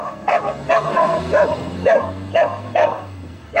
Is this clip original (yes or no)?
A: no